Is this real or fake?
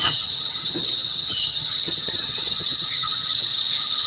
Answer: fake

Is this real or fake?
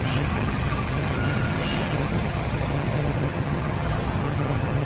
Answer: fake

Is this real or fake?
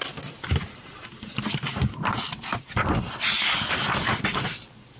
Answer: real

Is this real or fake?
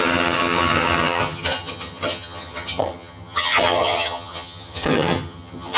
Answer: fake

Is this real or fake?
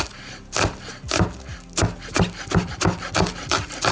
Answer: real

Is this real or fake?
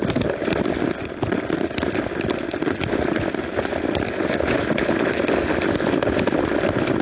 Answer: real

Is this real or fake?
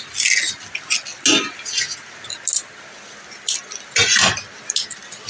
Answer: real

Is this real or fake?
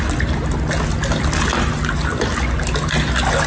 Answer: real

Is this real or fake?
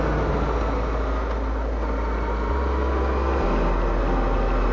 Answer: real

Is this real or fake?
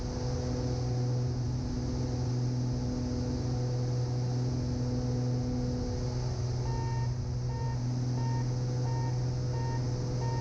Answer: real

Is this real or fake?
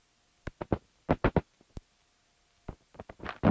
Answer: real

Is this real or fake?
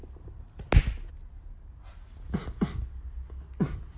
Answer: real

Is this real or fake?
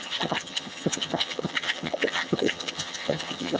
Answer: fake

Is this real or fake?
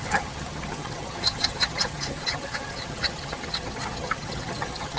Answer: fake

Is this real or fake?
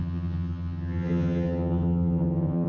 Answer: fake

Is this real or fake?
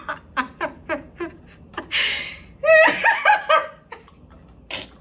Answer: real